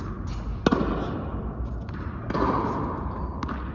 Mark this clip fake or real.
real